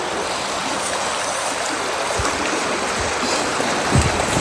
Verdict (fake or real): real